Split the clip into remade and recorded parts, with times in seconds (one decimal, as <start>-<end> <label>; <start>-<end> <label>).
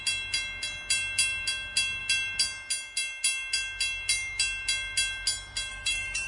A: 0.0-5.7 recorded; 5.7-6.3 remade